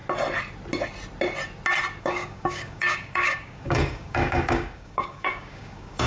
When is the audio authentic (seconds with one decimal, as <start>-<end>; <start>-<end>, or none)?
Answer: 0.0-2.0